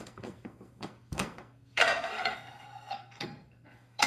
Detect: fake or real fake